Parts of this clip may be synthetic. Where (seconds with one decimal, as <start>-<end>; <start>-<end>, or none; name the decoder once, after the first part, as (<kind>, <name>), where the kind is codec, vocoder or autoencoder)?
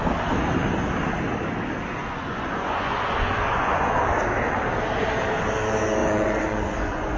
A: 2.0-4.0 (vocoder, Vocos); 6.0-7.2